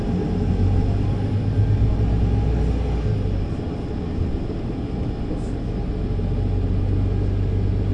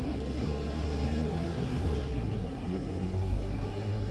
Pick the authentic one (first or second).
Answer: first